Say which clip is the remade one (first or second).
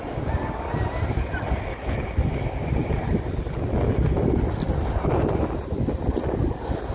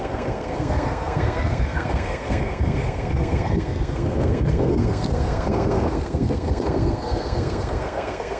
second